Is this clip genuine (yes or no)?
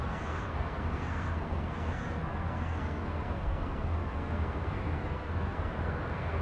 no